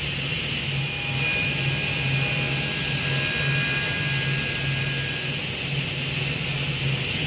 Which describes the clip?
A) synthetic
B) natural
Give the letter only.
B